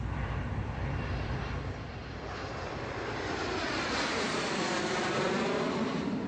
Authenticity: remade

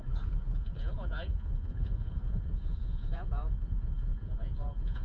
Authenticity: remade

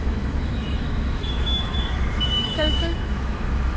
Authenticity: remade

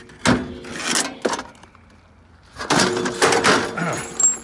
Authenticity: recorded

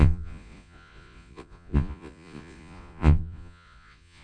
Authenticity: remade